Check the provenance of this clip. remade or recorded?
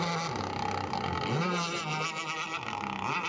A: recorded